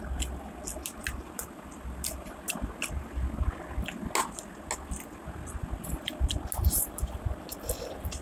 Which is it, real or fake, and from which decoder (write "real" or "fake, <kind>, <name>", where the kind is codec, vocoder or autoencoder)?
real